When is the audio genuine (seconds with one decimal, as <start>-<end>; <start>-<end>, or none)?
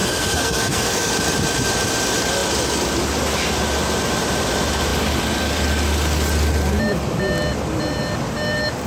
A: 1.1-8.9